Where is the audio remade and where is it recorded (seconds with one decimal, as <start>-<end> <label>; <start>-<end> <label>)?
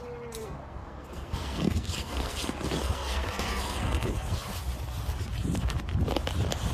0.0-0.4 recorded; 0.4-4.4 remade; 4.4-6.7 recorded